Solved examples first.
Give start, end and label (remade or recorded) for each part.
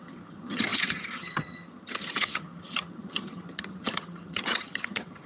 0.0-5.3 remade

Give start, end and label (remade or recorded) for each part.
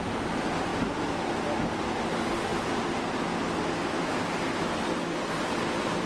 0.0-6.1 recorded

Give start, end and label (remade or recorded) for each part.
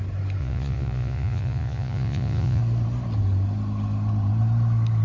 0.0-0.4 recorded; 0.4-2.6 remade; 2.6-5.0 recorded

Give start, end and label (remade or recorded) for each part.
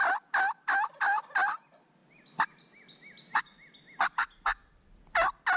0.0-5.6 recorded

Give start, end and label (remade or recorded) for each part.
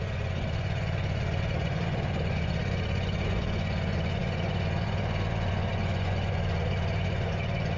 0.0-7.8 remade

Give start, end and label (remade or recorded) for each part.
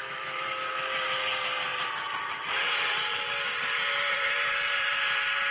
0.0-1.7 recorded; 1.7-5.0 remade; 5.0-5.5 recorded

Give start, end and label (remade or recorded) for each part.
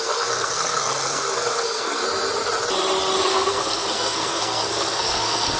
0.0-2.0 remade; 2.0-3.3 recorded; 3.3-5.6 remade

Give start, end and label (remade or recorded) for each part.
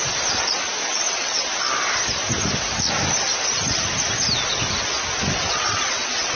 0.0-0.9 recorded; 0.9-1.5 remade; 1.5-5.3 recorded; 5.3-6.4 remade